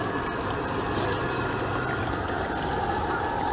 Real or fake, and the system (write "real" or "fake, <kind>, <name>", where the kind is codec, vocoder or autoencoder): real